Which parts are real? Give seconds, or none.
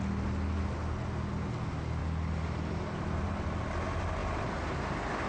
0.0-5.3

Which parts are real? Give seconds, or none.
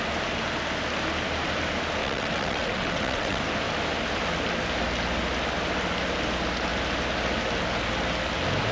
0.0-2.0; 3.4-8.7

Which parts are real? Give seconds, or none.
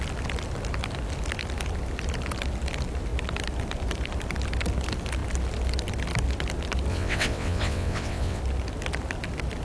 0.0-6.9; 8.4-9.6